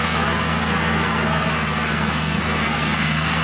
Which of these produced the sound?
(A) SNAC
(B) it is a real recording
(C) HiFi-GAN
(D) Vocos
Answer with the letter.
A